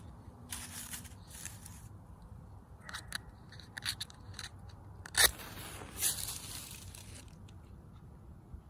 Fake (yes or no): no